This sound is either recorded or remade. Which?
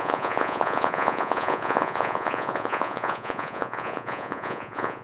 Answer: remade